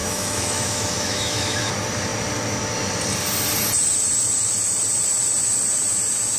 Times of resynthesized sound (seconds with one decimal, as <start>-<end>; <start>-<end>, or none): 0.0-1.7